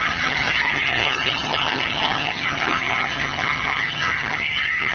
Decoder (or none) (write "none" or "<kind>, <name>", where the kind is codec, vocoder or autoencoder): vocoder, HiFi-GAN